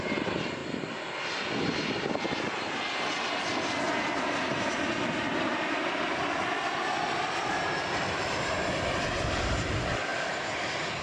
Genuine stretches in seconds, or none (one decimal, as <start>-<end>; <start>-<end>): 0.6-5.0; 5.5-7.0; 10.1-11.0

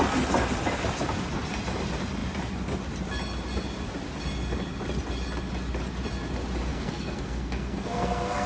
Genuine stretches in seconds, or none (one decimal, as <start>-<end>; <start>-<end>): 0.0-6.7

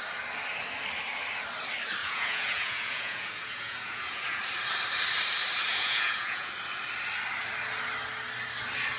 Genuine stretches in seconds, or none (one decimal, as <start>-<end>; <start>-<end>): 0.0-2.0; 4.5-5.7; 6.5-9.0